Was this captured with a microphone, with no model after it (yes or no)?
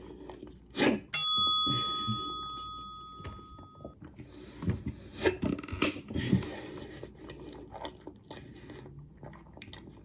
yes